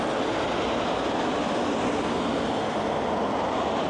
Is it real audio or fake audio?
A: real